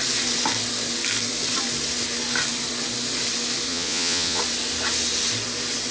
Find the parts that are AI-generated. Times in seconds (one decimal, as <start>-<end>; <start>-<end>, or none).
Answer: 3.7-4.4

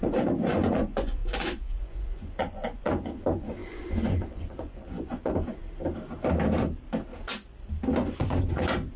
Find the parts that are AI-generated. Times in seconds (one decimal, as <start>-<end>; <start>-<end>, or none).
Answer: 0.0-5.6; 8.0-9.0

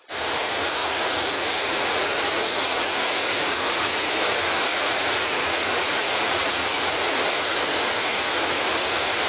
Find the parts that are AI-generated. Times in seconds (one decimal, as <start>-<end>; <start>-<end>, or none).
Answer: 0.8-4.1; 4.7-7.2

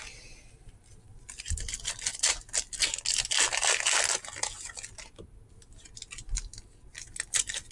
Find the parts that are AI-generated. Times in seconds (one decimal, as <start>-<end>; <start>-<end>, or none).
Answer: none

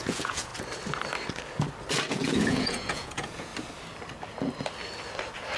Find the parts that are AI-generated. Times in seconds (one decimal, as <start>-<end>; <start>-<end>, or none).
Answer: 0.0-0.5; 2.1-3.5

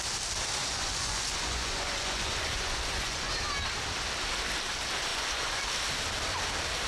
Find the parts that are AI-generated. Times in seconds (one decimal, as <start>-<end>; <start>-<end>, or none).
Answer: 0.6-3.3; 5.1-5.6

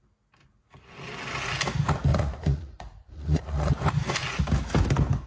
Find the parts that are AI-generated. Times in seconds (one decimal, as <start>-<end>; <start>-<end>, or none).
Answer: 2.1-3.7

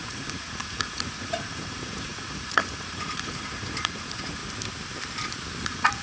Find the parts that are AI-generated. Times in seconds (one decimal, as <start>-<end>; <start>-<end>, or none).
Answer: 0.0-4.4; 5.6-6.0